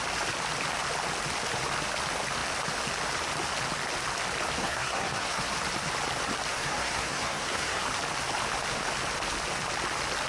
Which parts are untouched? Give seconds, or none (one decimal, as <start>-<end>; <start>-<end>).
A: 0.0-4.6; 5.5-6.5; 7.8-10.3

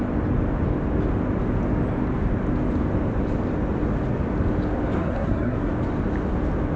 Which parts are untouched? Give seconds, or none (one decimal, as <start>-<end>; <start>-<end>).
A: 0.0-5.0; 5.7-6.8

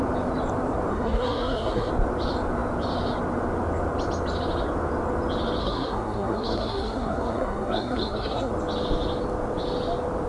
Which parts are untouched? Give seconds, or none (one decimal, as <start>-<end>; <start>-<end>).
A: 0.0-0.9; 1.9-5.6; 8.5-10.3

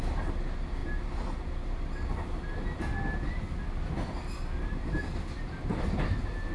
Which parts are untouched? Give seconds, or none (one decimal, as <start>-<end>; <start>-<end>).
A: 0.0-6.5

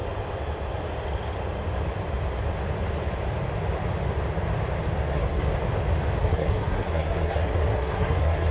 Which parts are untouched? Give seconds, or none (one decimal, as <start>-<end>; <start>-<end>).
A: 0.0-5.1; 5.5-6.2

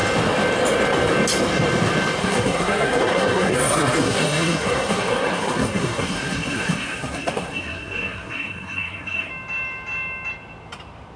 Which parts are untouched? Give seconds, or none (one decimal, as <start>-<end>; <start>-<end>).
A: 0.0-2.2; 9.3-11.2

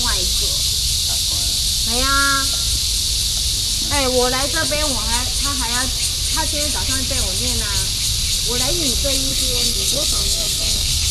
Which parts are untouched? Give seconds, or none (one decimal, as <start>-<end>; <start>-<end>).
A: 0.0-9.3

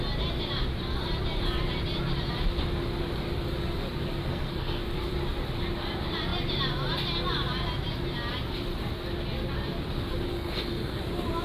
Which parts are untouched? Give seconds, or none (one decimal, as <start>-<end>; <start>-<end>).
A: 0.0-4.2; 4.8-10.3; 11.0-11.4